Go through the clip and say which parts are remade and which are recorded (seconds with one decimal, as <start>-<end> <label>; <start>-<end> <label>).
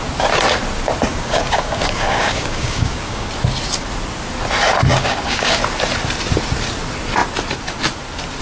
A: 0.0-1.1 recorded; 1.1-3.3 remade; 3.3-4.9 recorded; 4.9-5.6 remade; 5.6-8.4 recorded